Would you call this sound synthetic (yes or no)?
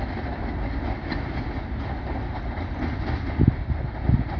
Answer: no